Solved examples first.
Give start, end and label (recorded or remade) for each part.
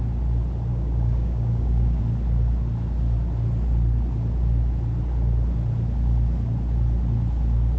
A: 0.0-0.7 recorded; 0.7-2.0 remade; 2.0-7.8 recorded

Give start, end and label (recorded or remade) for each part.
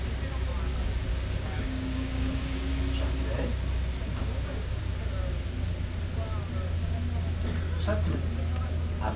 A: 0.0-1.1 recorded; 1.1-2.7 remade; 2.7-4.2 recorded; 4.2-4.8 remade; 4.8-9.2 recorded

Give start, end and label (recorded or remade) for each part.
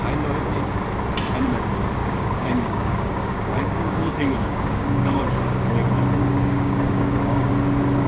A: 0.0-2.0 recorded; 2.0-5.2 remade; 5.2-6.2 recorded; 6.2-7.5 remade; 7.5-8.1 recorded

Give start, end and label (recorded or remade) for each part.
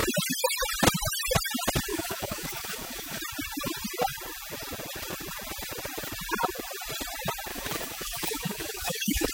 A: 0.0-1.9 recorded; 1.9-3.2 remade; 3.2-7.5 recorded; 7.5-9.3 remade